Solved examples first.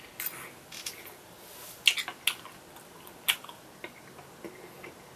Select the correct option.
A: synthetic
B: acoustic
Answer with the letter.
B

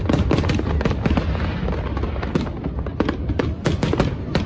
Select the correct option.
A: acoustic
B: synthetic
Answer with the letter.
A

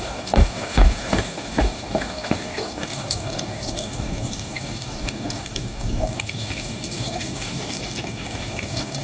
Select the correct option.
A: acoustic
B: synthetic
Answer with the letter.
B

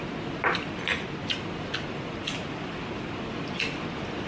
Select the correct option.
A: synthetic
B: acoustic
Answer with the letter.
B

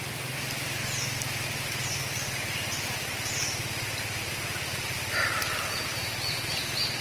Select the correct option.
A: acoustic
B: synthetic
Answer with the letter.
A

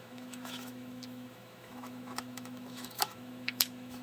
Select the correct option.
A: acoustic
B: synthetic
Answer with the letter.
B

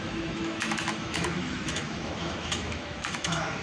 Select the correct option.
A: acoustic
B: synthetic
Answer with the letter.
B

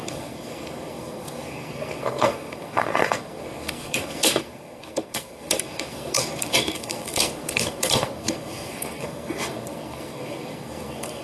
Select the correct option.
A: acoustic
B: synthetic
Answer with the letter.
B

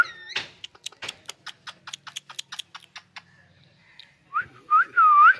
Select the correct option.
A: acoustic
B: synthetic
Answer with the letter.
A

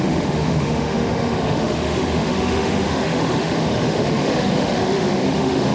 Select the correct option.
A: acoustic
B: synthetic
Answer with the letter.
B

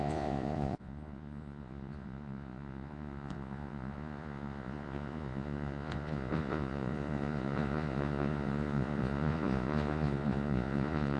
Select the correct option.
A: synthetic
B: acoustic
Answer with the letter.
A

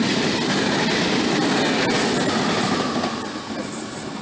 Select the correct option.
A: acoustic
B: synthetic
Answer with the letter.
A